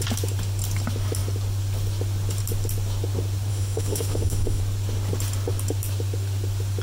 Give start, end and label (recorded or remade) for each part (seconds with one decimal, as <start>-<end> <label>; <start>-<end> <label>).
0.0-3.5 recorded; 3.5-4.6 remade; 4.6-6.8 recorded